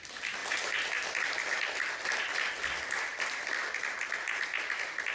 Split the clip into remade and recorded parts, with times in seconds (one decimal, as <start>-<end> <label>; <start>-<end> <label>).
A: 0.0-5.1 recorded

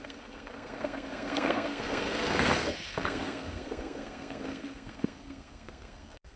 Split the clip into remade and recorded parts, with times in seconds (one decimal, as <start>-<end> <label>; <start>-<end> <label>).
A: 0.0-6.4 remade

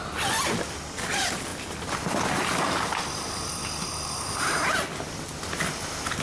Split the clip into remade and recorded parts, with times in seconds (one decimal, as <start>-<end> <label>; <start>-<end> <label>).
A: 0.0-6.2 recorded

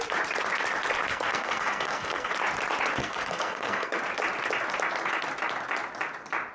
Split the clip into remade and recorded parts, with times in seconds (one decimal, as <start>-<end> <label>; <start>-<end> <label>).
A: 0.0-1.1 recorded; 1.1-2.3 remade; 2.3-3.0 recorded; 3.0-4.0 remade; 4.0-6.5 recorded

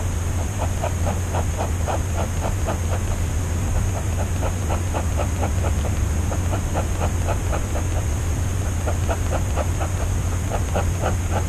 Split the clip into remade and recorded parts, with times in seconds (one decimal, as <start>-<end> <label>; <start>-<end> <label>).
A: 0.0-11.5 recorded

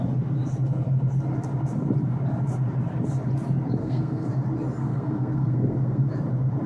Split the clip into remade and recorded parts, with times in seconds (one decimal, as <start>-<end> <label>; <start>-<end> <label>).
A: 0.0-3.8 recorded; 3.8-4.3 remade; 4.3-4.8 recorded; 4.8-6.0 remade; 6.0-6.7 recorded